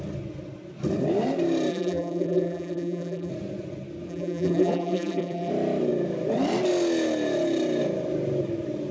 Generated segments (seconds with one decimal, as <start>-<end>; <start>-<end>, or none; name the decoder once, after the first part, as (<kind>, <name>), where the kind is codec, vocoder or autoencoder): 1.7-3.3 (vocoder, BigVGAN v2); 4.1-5.5